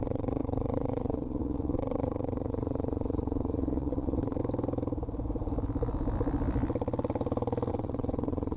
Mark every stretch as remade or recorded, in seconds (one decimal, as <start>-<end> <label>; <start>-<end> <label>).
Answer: 0.0-4.4 remade; 4.4-7.7 recorded; 7.7-8.6 remade